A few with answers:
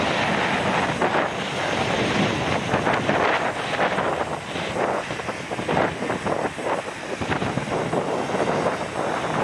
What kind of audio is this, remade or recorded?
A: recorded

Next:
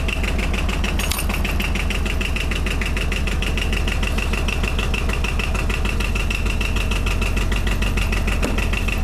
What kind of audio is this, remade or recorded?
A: recorded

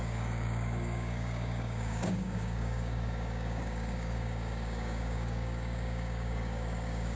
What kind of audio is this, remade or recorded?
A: remade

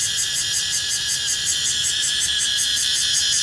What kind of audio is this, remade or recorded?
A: remade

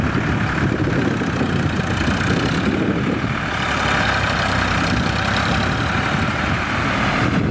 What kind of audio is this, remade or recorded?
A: remade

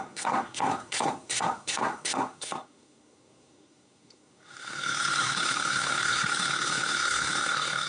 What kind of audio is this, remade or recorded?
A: remade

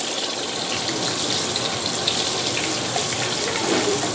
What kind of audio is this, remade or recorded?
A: recorded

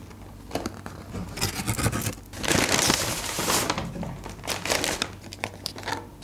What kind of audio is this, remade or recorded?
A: recorded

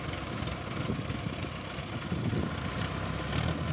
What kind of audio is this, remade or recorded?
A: recorded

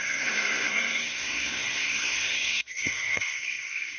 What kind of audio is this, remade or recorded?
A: remade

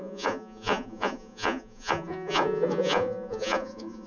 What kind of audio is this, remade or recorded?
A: remade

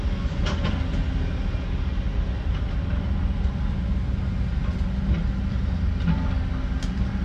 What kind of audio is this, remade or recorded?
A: recorded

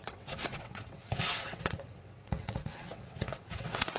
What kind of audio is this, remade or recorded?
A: remade